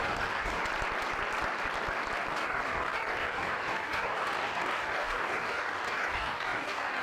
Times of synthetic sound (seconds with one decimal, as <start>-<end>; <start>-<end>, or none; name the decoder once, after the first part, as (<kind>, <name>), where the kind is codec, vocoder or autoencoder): 0.0-0.6 (codec, DAC); 2.3-7.0